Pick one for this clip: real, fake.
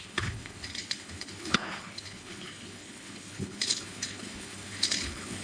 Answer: fake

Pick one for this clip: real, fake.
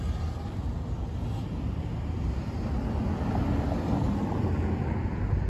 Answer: real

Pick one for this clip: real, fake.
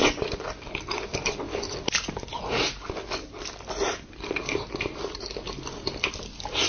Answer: real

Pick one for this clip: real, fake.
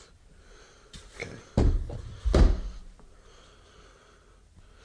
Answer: real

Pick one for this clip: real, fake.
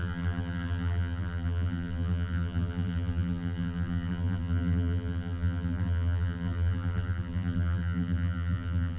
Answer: fake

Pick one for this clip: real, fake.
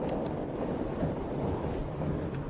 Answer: real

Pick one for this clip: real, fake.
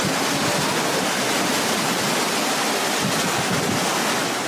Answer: real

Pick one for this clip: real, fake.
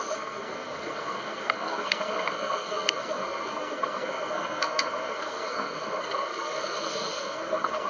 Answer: fake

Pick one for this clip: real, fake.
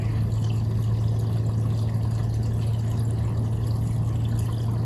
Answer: real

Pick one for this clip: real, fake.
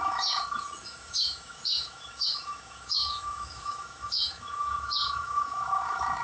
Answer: fake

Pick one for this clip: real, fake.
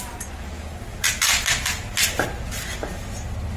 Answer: real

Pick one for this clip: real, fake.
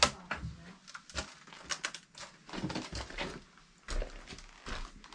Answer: real